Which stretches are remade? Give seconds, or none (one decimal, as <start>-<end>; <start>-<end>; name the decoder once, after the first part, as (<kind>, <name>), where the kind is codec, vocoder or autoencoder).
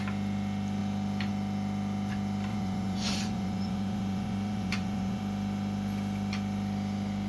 2.5-5.2 (vocoder, Vocos)